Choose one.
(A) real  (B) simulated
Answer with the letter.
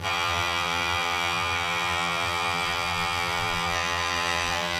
B